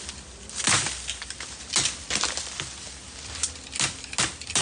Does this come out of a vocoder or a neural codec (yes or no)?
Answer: no